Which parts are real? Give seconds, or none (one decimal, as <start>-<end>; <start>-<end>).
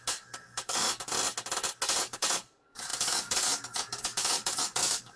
1.1-2.0